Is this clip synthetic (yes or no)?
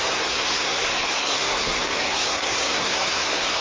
yes